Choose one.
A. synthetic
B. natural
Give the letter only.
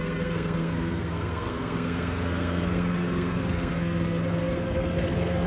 A